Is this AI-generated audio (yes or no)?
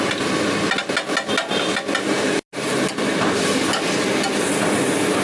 no